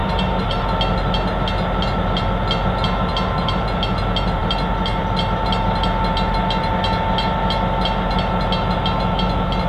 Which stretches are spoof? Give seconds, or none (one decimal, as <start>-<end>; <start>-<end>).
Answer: 0.0-0.7